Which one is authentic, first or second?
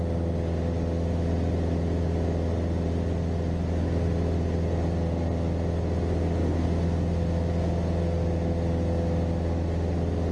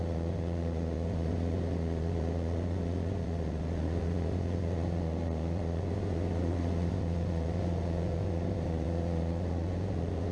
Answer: first